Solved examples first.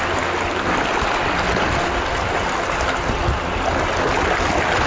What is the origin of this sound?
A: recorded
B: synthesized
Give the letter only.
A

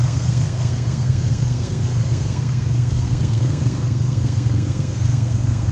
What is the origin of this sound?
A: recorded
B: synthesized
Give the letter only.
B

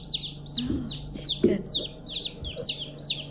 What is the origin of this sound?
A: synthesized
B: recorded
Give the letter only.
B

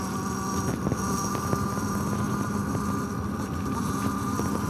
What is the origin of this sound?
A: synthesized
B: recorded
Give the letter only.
B